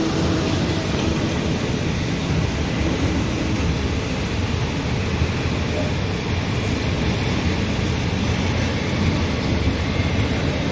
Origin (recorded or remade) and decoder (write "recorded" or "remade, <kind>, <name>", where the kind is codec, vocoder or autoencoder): remade, vocoder, BigVGAN v2